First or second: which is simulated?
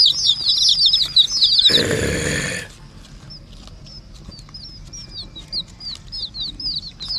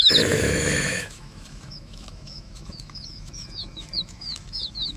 second